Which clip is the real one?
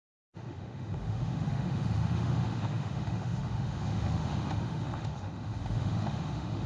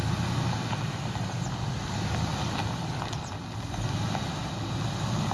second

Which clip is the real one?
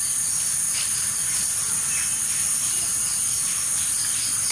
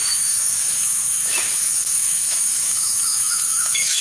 first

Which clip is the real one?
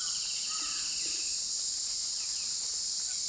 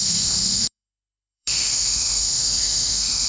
first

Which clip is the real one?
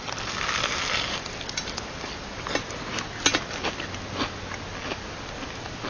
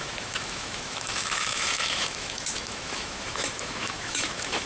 first